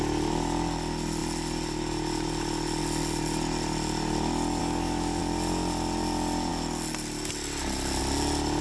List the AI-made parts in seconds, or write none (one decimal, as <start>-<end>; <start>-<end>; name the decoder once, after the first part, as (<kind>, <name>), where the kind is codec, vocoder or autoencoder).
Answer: 4.6-5.2 (codec, DAC)